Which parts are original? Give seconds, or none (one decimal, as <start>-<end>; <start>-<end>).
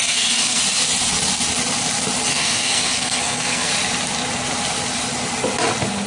0.6-2.3; 3.7-6.1